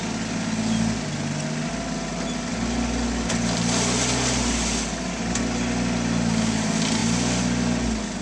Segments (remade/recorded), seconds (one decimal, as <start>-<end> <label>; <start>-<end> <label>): 0.0-8.2 recorded

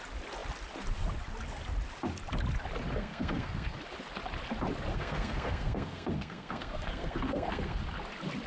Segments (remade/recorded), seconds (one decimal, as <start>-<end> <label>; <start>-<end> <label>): 0.0-3.0 recorded; 3.0-3.8 remade; 3.8-4.9 recorded; 4.9-7.8 remade; 7.8-8.5 recorded

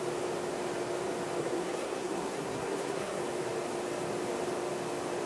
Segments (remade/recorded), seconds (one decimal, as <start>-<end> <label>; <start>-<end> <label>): 0.0-1.4 recorded; 1.4-3.2 remade; 3.2-5.3 recorded

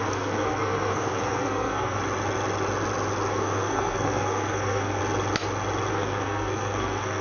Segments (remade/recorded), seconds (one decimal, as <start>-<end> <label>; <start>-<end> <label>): 0.0-2.0 remade; 2.0-3.3 recorded; 3.3-5.0 remade; 5.0-5.9 recorded; 5.9-7.2 remade